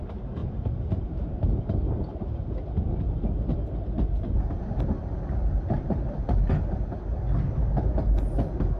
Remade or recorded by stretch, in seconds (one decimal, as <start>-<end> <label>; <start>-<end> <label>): 0.0-8.8 recorded